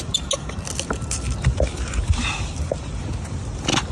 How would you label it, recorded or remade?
recorded